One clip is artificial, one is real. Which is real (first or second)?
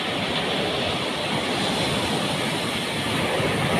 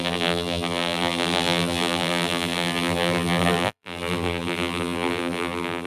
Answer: first